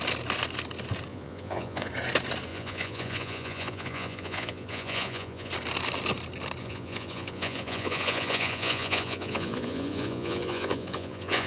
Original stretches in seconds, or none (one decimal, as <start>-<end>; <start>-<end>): 0.0-1.1; 1.9-2.5; 5.5-6.6